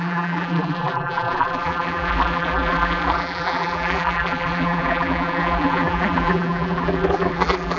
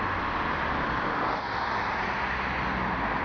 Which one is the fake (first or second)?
first